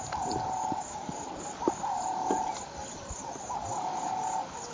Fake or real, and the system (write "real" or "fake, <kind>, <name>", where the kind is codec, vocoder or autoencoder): real